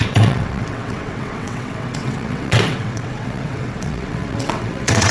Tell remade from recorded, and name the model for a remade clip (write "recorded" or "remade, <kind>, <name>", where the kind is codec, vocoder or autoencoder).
remade, vocoder, WaveNeXt